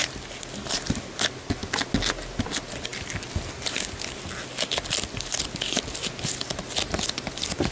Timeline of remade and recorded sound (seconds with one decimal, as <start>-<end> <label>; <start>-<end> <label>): 0.0-7.7 recorded